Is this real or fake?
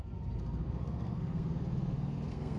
fake